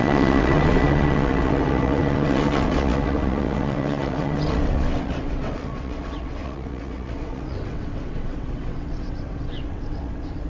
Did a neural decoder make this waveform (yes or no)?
yes